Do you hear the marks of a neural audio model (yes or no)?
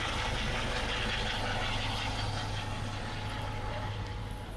no